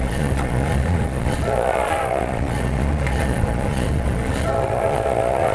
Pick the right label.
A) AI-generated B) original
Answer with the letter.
A